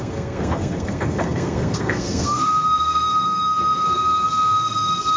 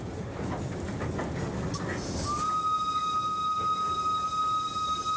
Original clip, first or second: second